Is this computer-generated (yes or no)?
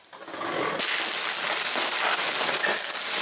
no